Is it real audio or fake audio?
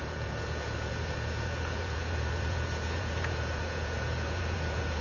fake